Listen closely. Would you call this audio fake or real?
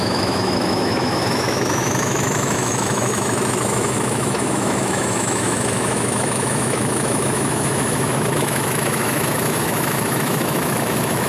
fake